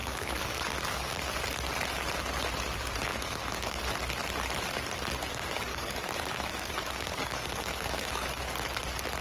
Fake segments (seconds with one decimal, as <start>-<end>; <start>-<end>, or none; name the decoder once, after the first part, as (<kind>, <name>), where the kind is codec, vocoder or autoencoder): 0.0-1.3 (codec, DAC); 3.1-3.8; 5.7-8.4